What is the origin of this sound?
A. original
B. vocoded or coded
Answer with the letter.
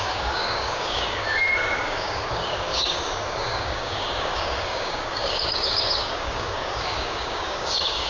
B